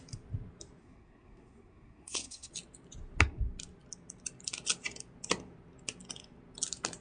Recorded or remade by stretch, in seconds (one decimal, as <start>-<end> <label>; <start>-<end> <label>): 0.0-0.8 recorded; 0.8-2.5 remade; 2.5-7.0 recorded